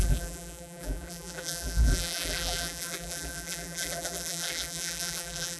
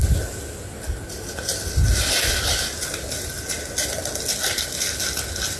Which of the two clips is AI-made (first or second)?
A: first